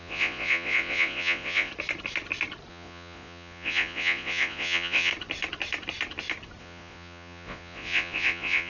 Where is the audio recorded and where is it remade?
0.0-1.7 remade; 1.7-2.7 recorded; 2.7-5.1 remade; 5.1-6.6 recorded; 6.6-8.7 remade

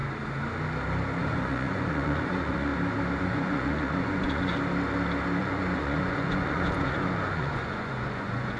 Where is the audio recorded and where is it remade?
0.0-1.2 recorded; 1.2-2.7 remade; 2.7-3.2 recorded; 3.2-4.5 remade; 4.5-5.4 recorded; 5.4-8.6 remade

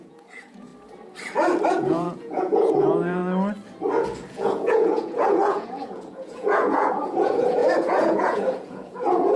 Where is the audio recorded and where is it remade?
0.0-0.7 remade; 0.7-1.7 recorded; 1.7-3.2 remade; 3.2-4.3 recorded; 4.3-9.4 remade

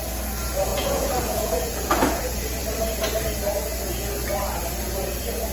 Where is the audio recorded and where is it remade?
0.0-0.7 recorded; 0.7-2.2 remade; 2.2-5.5 recorded